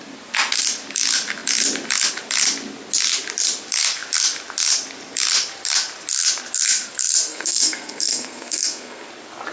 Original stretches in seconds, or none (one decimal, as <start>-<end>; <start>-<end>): 0.0-7.3; 9.1-9.5